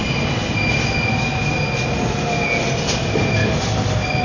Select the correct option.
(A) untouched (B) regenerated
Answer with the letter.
A